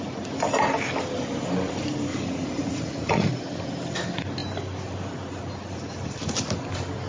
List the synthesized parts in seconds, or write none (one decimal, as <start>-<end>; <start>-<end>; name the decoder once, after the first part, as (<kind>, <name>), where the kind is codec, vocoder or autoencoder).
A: 2.1-3.3 (vocoder, Vocos)